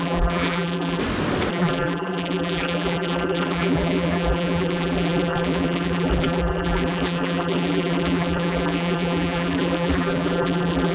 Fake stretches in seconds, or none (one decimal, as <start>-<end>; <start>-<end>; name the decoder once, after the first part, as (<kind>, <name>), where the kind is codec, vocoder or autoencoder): 0.0-1.0 (vocoder, BigVGAN v2); 1.5-10.9